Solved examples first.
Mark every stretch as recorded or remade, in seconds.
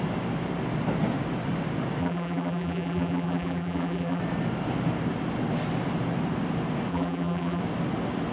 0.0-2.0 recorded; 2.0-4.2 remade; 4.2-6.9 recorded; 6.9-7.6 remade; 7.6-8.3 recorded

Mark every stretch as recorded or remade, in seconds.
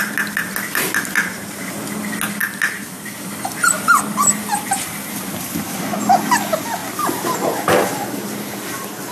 0.0-9.1 recorded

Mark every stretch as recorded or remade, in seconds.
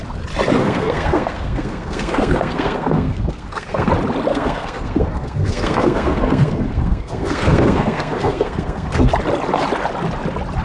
0.0-0.6 recorded; 0.6-3.9 remade; 3.9-4.3 recorded; 4.3-9.1 remade; 9.1-10.6 recorded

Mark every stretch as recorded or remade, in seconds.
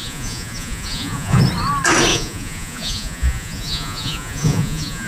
0.0-1.4 remade; 1.4-2.1 recorded; 2.1-5.1 remade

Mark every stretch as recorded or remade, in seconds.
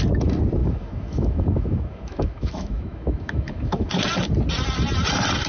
0.0-0.6 recorded; 0.6-3.9 remade; 3.9-5.5 recorded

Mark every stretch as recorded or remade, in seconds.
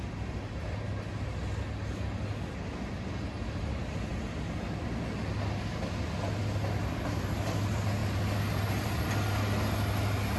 0.0-10.4 recorded